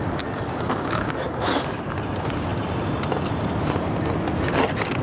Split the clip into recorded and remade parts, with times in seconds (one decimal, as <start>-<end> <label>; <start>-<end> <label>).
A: 0.0-0.5 recorded; 0.5-1.1 remade; 1.1-5.0 recorded